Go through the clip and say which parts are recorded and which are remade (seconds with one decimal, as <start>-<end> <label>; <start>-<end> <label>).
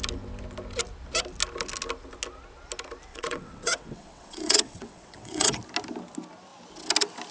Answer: 0.0-3.1 recorded; 3.1-5.6 remade; 5.6-7.3 recorded